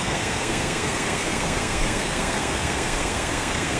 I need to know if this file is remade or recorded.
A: remade